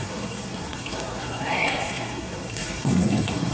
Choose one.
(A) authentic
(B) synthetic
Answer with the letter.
B